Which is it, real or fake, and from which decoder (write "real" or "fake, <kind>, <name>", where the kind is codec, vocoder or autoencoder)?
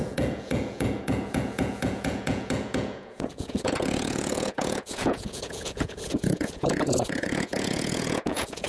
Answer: fake, vocoder, Vocos